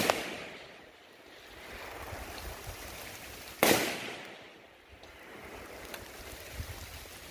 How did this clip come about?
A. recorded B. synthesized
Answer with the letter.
A